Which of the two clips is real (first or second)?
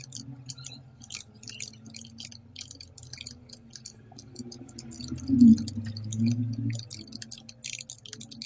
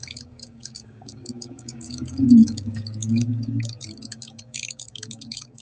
first